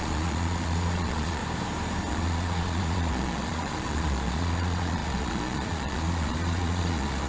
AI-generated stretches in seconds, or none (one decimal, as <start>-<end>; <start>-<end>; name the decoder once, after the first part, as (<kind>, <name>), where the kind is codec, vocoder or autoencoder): 0.0-1.4 (vocoder, Vocos); 2.1-7.3